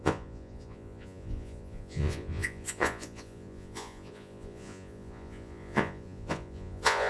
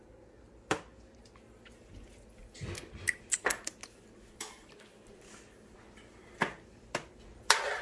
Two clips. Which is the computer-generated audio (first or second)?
first